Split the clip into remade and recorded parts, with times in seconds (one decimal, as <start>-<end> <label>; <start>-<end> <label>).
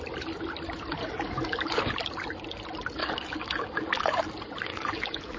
0.0-1.0 recorded; 1.0-1.8 remade; 1.8-3.0 recorded; 3.0-4.2 remade; 4.2-4.7 recorded; 4.7-5.4 remade